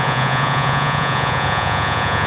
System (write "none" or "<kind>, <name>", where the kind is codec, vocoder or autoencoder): vocoder, Vocos